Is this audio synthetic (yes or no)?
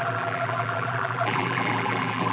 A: yes